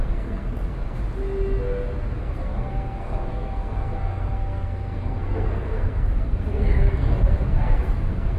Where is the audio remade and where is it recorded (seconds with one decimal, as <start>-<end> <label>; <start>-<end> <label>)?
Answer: 0.0-1.0 remade; 1.0-2.2 recorded; 2.2-8.4 remade